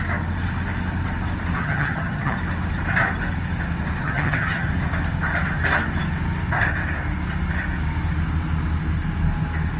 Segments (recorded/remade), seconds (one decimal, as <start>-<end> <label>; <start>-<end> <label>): 0.0-1.6 recorded; 1.6-2.4 remade; 2.4-4.0 recorded; 4.0-4.7 remade; 4.7-9.8 recorded